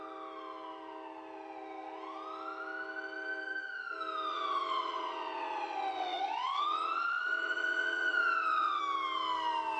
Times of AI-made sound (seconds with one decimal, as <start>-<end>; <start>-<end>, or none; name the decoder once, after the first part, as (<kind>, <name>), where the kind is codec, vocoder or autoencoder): 4.3-8.8 (vocoder, WaveNeXt)